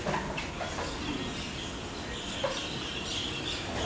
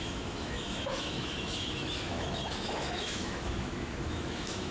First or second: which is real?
first